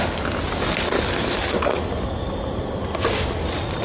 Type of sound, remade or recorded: recorded